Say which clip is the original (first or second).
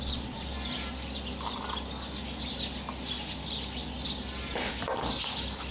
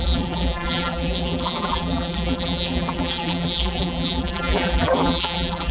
first